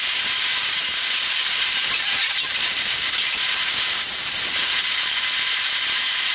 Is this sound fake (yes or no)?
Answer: yes